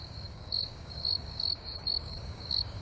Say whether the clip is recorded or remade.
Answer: remade